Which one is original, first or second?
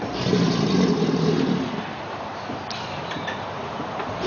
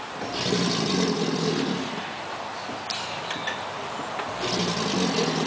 second